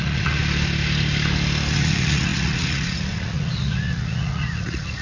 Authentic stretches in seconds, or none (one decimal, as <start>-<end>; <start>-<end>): 0.4-1.7